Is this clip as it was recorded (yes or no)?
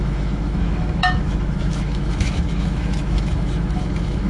no